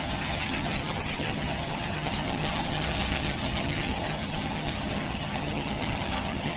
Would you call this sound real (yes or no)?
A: no